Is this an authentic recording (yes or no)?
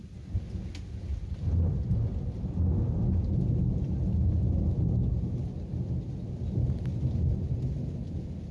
yes